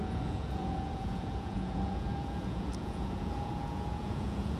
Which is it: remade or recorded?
remade